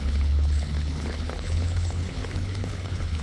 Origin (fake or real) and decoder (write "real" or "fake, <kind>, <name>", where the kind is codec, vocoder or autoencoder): fake, codec, HILCodec